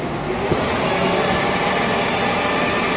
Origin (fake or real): real